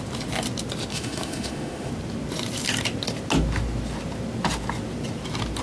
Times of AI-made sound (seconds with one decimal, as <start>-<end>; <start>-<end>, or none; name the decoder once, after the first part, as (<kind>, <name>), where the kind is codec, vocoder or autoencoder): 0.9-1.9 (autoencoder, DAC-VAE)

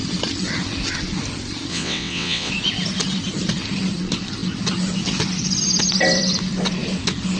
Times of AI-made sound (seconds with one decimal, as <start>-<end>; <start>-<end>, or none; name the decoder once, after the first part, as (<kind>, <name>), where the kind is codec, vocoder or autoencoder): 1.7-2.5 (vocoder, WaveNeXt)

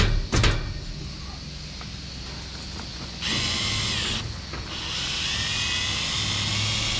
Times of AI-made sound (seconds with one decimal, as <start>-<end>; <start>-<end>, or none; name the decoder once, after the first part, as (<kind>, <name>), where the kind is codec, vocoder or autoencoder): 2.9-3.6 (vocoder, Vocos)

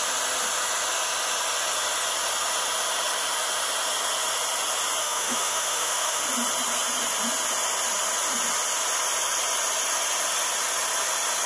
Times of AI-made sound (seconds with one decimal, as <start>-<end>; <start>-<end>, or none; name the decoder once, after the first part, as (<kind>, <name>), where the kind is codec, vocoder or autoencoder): 5.0-6.2 (autoencoder, DAC-VAE)